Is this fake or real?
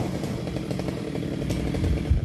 real